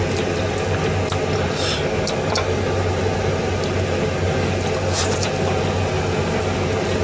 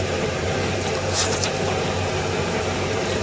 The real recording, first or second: first